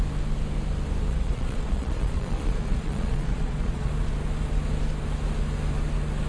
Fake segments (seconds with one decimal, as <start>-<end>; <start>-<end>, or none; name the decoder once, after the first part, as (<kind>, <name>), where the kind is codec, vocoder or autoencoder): 1.1-3.9 (vocoder, Vocos)